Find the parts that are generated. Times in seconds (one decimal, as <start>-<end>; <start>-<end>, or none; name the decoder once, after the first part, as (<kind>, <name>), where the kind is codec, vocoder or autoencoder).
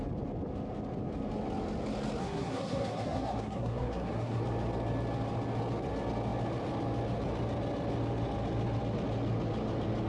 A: 2.2-4.4 (codec, SNAC)